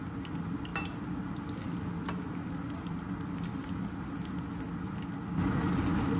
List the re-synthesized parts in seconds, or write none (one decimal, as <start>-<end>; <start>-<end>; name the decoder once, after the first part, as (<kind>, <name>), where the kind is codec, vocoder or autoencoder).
none